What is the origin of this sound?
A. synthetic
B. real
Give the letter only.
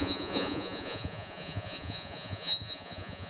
A